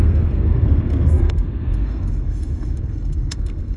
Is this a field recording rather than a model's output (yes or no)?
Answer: no